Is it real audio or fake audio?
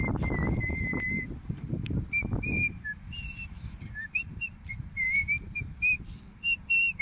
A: fake